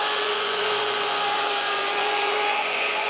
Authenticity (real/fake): fake